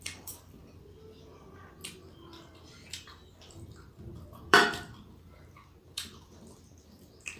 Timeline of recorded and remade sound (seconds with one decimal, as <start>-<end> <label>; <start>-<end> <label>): 0.0-0.6 remade; 0.6-3.3 recorded; 3.3-7.4 remade